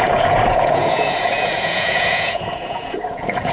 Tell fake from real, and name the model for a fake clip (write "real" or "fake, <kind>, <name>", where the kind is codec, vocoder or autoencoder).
fake, vocoder, Vocos